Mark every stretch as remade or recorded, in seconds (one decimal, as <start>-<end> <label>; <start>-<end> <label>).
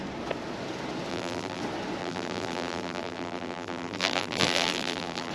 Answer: 0.0-1.1 recorded; 1.1-1.6 remade; 1.6-2.0 recorded; 2.0-5.3 remade